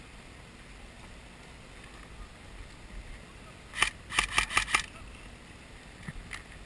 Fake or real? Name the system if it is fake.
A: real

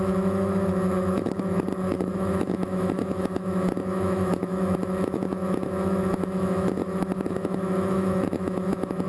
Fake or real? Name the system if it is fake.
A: fake, autoencoder, DAC-VAE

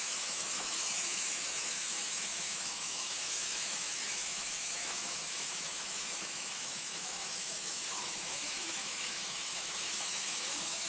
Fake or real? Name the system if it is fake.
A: fake, autoencoder, DAC-VAE